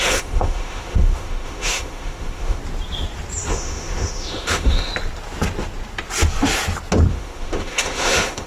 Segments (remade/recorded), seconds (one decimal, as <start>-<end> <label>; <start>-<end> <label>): 0.0-2.6 remade; 2.6-3.5 recorded; 3.5-4.9 remade; 4.9-7.1 recorded; 7.1-8.5 remade